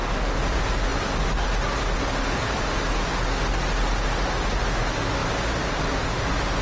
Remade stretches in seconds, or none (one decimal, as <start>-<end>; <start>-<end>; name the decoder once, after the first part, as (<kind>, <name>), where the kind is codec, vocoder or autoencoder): none